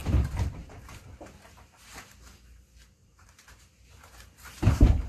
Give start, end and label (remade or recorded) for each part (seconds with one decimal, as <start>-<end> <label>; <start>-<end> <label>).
0.0-0.6 remade; 0.6-3.0 recorded; 3.0-5.1 remade